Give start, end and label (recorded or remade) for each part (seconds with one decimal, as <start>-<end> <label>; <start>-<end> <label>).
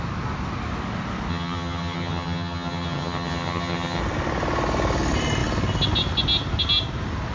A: 0.0-1.3 recorded; 1.3-4.0 remade; 4.0-7.3 recorded